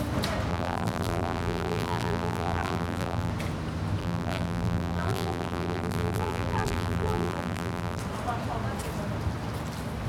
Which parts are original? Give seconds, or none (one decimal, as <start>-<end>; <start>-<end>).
0.0-0.5; 3.3-4.0; 8.0-10.1